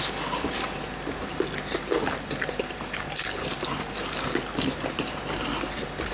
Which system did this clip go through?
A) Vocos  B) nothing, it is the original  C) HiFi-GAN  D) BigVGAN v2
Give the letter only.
B